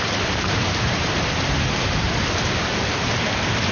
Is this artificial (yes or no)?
no